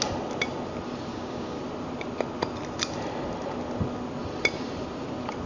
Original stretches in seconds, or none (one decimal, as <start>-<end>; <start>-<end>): 0.0-1.1; 1.6-5.5